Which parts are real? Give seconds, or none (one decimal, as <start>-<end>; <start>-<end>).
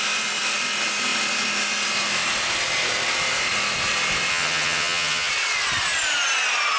0.0-4.3; 5.3-6.8